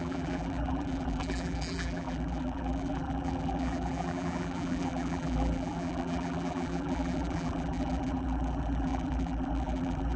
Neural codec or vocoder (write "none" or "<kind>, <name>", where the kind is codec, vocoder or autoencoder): vocoder, BigVGAN v2